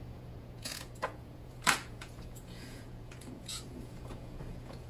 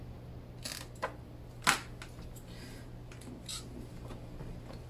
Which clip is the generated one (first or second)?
first